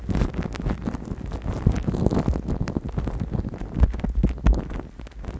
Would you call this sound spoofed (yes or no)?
no